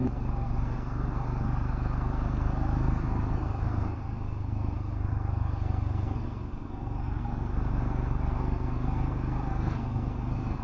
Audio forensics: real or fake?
fake